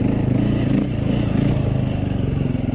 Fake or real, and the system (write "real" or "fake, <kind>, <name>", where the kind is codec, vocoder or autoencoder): real